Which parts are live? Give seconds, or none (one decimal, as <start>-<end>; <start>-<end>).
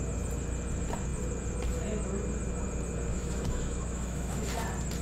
0.0-3.1; 4.5-5.0